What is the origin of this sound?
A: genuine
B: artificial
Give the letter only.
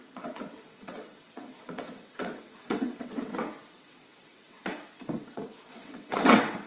B